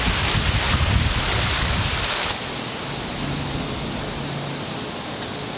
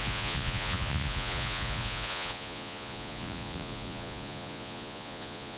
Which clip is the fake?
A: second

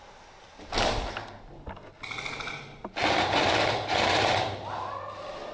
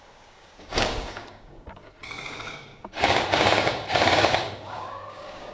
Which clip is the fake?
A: second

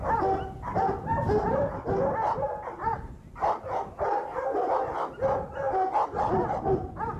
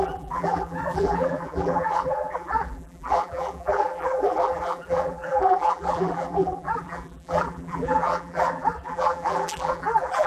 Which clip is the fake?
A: second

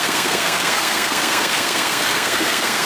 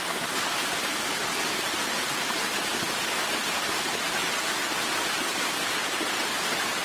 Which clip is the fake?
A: first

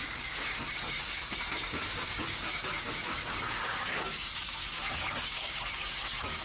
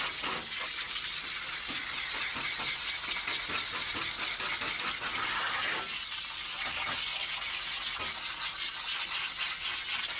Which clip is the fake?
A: first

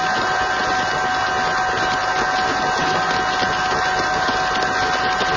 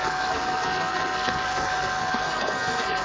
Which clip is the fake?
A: second